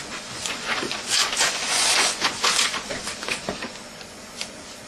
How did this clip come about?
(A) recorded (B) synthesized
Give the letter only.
B